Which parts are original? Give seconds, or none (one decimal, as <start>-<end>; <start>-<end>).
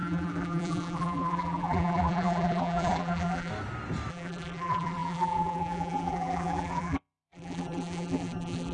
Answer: 3.5-4.1